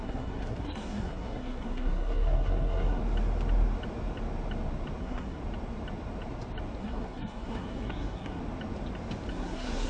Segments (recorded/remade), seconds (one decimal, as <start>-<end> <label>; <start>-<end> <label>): 0.0-3.0 remade; 3.0-5.0 recorded; 5.0-5.4 remade; 5.4-6.8 recorded; 6.8-8.4 remade; 8.4-9.3 recorded; 9.3-9.9 remade